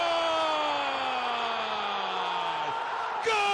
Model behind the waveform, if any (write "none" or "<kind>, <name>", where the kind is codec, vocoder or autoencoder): none